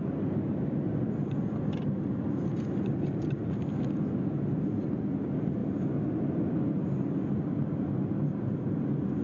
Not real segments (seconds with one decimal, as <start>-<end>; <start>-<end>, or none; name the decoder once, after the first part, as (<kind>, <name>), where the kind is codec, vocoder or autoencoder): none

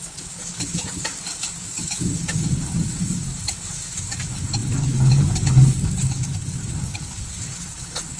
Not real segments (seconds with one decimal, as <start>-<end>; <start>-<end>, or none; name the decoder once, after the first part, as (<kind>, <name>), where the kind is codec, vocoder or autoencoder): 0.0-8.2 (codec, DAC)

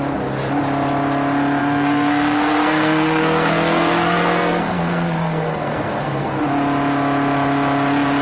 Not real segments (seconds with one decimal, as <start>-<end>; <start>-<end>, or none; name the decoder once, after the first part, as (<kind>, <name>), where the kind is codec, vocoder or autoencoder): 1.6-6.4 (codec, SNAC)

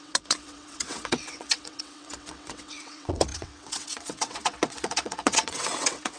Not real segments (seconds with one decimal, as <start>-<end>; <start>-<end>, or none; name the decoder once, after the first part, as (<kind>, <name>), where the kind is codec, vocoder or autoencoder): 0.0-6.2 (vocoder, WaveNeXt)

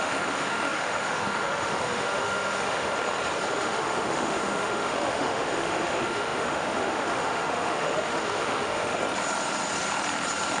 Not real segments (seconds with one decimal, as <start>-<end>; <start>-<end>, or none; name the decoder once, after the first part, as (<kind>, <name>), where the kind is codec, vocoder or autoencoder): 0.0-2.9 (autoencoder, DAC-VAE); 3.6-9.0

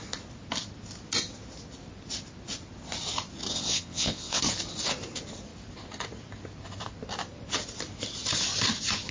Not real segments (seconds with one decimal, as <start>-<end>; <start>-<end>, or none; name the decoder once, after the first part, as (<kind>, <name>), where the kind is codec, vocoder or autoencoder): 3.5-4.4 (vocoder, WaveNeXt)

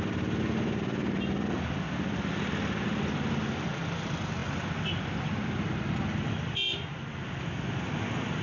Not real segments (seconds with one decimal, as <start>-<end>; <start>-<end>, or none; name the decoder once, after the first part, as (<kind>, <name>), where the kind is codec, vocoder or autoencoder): none

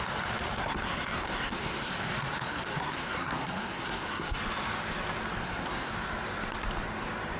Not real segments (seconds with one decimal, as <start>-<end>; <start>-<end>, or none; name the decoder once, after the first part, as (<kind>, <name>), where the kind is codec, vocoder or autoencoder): 0.6-1.9 (codec, SNAC); 2.3-4.4; 5.4-5.9